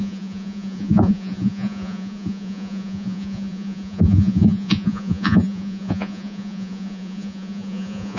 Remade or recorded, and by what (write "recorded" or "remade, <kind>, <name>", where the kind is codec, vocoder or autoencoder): remade, vocoder, Vocos